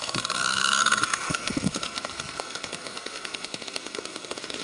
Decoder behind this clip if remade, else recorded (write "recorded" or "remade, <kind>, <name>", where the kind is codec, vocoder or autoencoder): remade, codec, SNAC